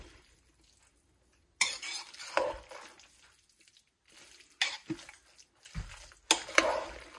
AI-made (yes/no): no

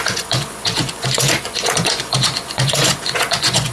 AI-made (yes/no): yes